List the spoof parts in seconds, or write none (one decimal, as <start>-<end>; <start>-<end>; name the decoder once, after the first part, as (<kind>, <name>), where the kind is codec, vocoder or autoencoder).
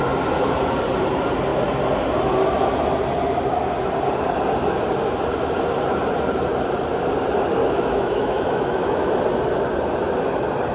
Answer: 7.6-9.1 (autoencoder, DAC-VAE)